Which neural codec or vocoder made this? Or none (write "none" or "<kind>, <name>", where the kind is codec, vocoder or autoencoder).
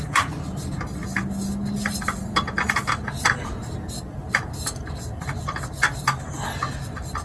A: none